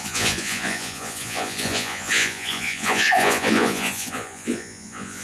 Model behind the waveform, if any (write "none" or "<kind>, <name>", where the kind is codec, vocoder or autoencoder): vocoder, Vocos